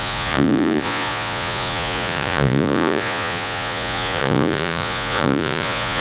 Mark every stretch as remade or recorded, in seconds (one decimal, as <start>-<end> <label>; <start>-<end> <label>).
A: 0.0-6.0 remade